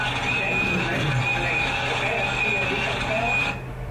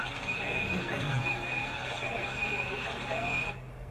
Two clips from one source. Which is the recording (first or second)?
first